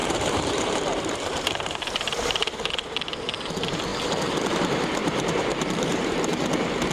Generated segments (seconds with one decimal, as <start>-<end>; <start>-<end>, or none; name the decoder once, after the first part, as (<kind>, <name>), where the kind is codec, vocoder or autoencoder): 0.0-2.7 (vocoder, BigVGAN v2); 5.0-6.5